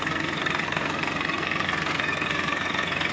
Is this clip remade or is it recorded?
remade